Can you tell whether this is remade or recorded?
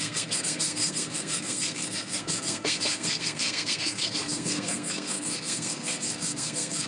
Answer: remade